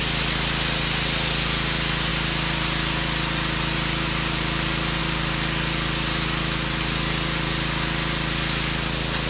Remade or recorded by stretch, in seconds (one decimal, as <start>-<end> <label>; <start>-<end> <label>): 0.0-9.3 recorded

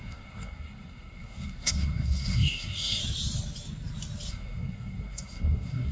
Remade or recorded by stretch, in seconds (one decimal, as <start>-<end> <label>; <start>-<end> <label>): 0.0-3.0 remade; 3.0-4.3 recorded; 4.3-5.9 remade

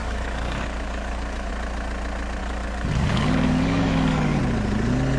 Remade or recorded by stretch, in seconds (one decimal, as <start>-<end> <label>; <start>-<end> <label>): 0.0-1.5 remade; 1.5-2.4 recorded; 2.4-4.4 remade; 4.4-5.2 recorded

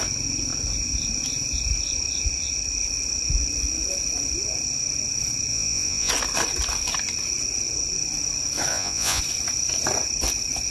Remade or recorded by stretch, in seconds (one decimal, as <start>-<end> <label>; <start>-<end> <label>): 0.0-5.5 recorded; 5.5-6.1 remade; 6.1-8.7 recorded; 8.7-9.2 remade; 9.2-10.7 recorded